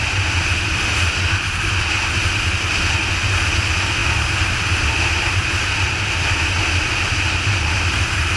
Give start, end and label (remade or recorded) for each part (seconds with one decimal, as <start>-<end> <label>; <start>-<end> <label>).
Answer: 0.0-8.4 recorded